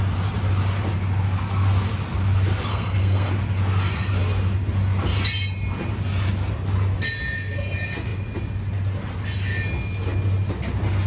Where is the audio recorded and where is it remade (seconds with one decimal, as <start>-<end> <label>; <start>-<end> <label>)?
0.0-2.7 recorded; 2.7-3.3 remade; 3.3-11.1 recorded